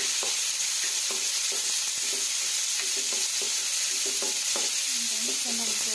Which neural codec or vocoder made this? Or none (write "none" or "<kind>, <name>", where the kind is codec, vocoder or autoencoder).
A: none